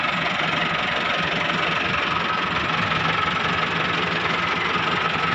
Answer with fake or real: real